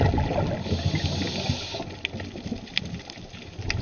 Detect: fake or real real